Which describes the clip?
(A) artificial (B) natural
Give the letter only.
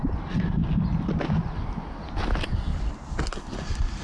B